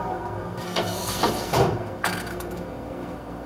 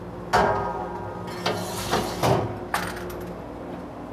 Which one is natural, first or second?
second